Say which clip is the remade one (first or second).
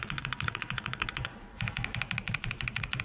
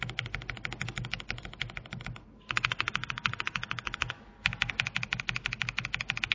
first